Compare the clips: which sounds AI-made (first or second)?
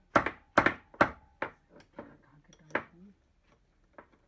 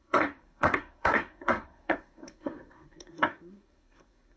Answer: second